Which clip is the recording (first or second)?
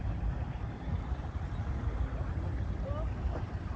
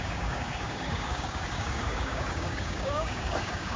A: first